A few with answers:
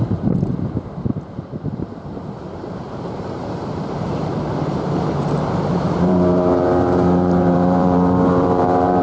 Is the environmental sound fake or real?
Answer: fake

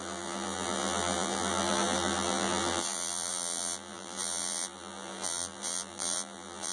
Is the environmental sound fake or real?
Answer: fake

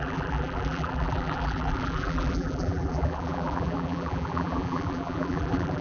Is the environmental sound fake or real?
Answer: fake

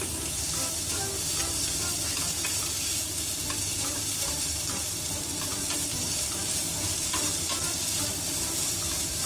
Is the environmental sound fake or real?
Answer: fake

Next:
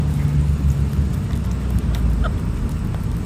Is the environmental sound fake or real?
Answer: real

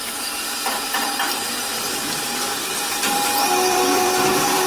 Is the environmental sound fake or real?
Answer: fake